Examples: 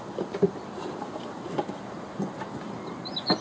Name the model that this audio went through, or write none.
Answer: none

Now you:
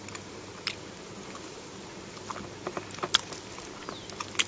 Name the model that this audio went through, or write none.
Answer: none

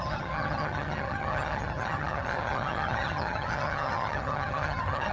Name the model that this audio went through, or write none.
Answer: vocoder, HiFi-GAN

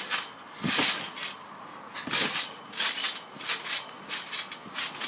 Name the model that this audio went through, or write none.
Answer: none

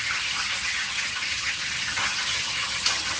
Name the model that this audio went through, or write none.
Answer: vocoder, HiFi-GAN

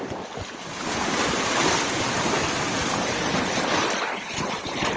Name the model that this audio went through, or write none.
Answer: none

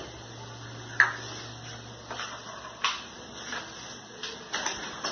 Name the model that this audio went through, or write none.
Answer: none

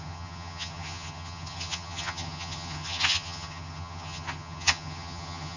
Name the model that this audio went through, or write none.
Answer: vocoder, HiFi-GAN